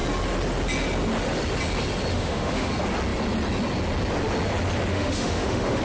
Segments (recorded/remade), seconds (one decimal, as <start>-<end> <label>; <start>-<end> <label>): 0.0-2.1 recorded; 2.1-2.7 remade; 2.7-4.9 recorded; 4.9-5.8 remade